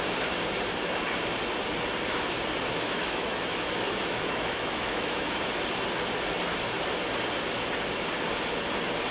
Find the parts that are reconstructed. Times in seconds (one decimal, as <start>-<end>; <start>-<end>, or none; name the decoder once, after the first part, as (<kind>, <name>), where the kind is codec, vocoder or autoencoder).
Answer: 2.7-5.4 (autoencoder, DAC-VAE)